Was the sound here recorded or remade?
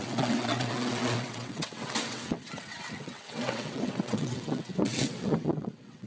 remade